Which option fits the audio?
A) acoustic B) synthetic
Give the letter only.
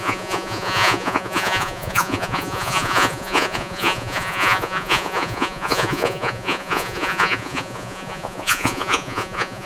B